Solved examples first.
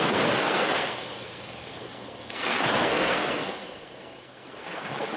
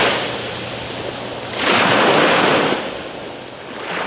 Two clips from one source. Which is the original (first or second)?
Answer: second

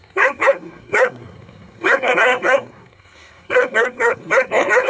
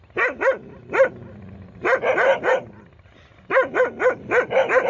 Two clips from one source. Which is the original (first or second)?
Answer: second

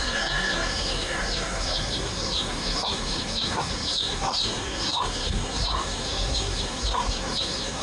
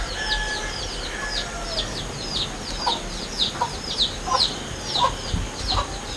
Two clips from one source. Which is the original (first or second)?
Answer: second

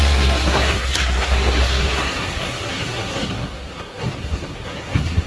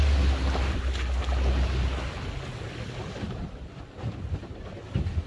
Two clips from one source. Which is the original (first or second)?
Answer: second